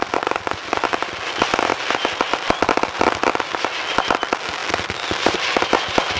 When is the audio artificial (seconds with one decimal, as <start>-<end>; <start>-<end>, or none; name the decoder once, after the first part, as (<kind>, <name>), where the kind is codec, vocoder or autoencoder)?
none